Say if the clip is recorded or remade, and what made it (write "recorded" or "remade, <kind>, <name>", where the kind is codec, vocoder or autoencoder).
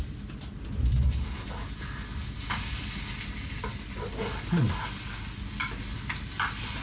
recorded